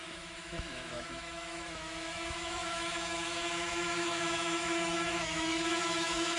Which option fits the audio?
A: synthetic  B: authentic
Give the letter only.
A